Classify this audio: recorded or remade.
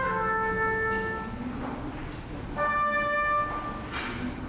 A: recorded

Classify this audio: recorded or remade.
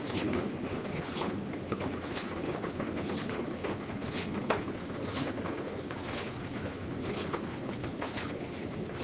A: remade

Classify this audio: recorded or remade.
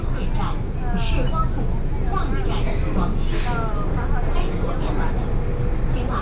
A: recorded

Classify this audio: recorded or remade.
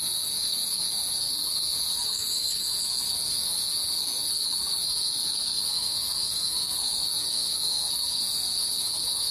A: remade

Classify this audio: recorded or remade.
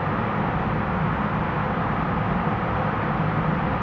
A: recorded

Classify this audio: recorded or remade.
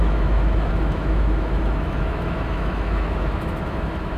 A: remade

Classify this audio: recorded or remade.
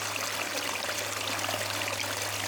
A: recorded